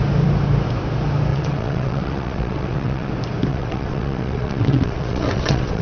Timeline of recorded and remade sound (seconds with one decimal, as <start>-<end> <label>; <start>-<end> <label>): 0.0-1.3 recorded; 1.3-3.1 remade; 3.1-3.5 recorded; 3.5-5.8 remade